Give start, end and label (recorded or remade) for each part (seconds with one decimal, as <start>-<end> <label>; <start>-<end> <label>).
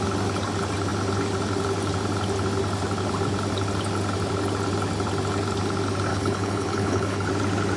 0.0-6.1 recorded; 6.1-7.3 remade; 7.3-7.8 recorded